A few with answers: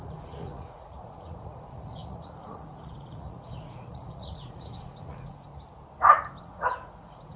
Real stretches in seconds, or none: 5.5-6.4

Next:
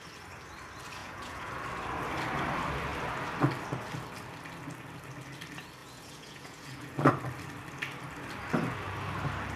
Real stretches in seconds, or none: 0.0-1.0; 1.5-5.8; 7.1-9.6

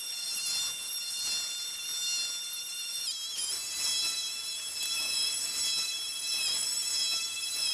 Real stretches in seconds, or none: 0.0-7.7